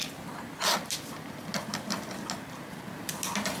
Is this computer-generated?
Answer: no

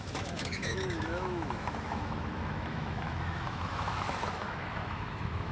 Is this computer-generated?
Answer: yes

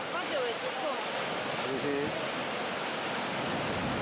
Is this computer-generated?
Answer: no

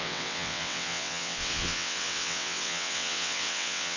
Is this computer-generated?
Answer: yes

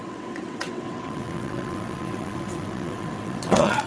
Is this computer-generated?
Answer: yes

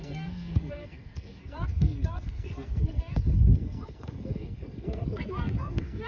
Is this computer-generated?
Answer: yes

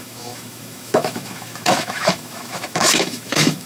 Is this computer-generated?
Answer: yes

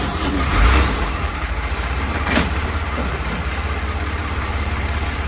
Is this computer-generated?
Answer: yes